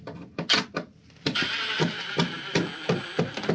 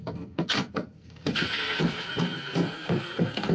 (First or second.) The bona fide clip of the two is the first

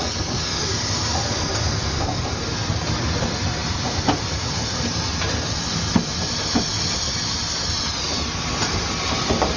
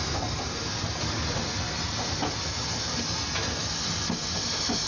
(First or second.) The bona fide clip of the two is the second